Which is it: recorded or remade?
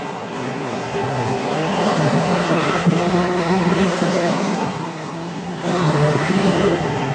remade